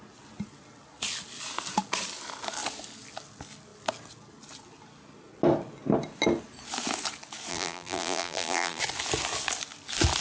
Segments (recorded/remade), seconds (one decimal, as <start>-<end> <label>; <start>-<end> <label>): 0.0-7.5 recorded; 7.5-8.8 remade; 8.8-10.2 recorded

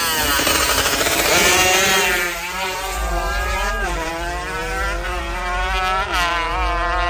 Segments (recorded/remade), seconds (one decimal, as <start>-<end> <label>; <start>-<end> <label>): 0.0-1.5 recorded; 1.5-4.1 remade; 4.1-7.1 recorded

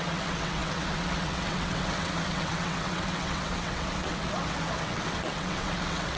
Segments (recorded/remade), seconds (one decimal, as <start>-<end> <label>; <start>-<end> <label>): 0.0-6.2 remade

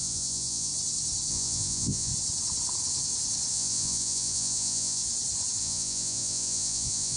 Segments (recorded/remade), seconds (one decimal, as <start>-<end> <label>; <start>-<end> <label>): 0.0-0.7 remade; 0.7-1.3 recorded; 1.3-2.1 remade; 2.1-3.5 recorded; 3.5-5.0 remade; 5.0-5.6 recorded; 5.6-7.2 remade

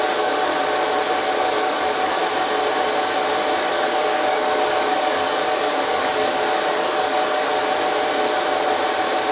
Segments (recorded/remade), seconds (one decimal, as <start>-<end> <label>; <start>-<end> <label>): 0.0-0.5 remade; 0.5-1.3 recorded; 1.3-2.2 remade; 2.2-3.7 recorded; 3.7-7.5 remade; 7.5-9.3 recorded

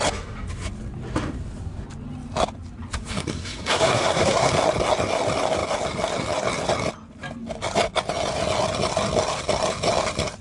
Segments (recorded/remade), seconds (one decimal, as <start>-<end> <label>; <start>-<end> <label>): 0.0-3.0 recorded; 3.0-4.5 remade; 4.5-10.4 recorded

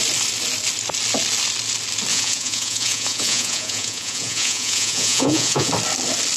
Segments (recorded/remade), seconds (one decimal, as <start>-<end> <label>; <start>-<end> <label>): 0.0-2.1 recorded; 2.1-5.7 remade; 5.7-6.4 recorded

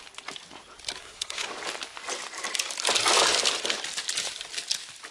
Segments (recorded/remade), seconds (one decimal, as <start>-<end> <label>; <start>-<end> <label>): 0.0-1.0 recorded; 1.0-1.5 remade; 1.5-5.1 recorded